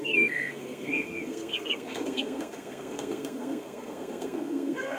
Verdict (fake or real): fake